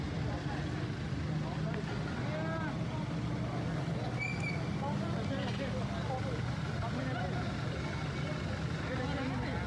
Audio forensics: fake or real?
real